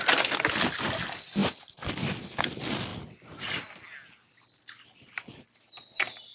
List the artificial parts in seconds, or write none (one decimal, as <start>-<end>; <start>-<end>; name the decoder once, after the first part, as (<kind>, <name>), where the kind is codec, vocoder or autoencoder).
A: none